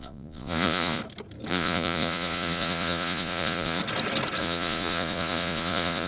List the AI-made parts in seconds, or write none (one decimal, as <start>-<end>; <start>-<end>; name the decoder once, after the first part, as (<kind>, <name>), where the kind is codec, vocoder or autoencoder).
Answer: 0.0-1.0 (vocoder, Vocos); 1.5-3.8; 4.4-6.1